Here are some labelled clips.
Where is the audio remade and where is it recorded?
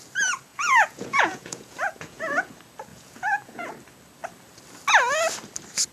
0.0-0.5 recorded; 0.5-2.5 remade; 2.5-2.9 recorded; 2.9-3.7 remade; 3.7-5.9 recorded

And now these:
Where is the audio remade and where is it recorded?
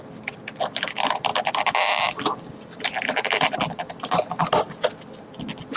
0.0-5.8 recorded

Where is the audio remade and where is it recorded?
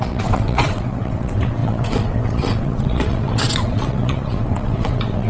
0.0-5.3 remade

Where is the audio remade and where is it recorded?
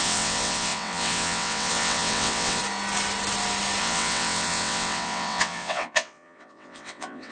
0.0-2.6 remade; 2.6-3.8 recorded; 3.8-7.3 remade